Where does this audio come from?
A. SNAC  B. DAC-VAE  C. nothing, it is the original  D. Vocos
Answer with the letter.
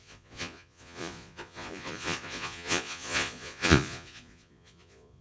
D